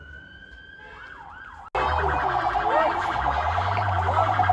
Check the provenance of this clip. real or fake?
real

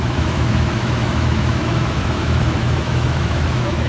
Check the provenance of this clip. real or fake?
fake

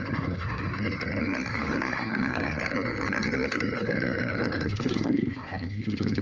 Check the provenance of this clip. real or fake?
fake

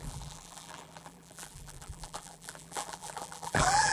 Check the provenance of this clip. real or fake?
fake